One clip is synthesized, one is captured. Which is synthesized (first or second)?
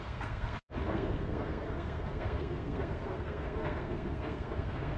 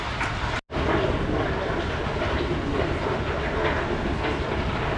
first